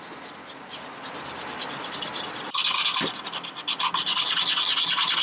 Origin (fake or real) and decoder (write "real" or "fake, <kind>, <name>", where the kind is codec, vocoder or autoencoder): real